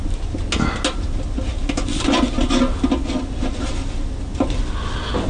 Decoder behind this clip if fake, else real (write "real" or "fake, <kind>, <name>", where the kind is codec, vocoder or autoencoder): real